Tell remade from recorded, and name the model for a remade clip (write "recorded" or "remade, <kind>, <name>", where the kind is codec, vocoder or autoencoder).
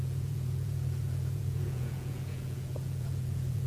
remade, vocoder, Vocos